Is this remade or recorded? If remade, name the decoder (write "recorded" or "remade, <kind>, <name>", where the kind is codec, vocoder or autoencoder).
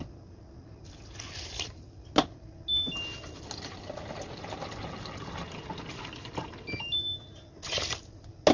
recorded